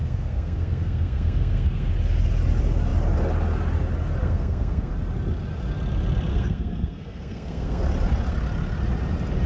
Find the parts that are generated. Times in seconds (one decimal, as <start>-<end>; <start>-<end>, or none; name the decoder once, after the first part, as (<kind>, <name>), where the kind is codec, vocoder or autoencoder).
0.0-1.9 (codec, SNAC); 4.2-4.9; 6.3-7.8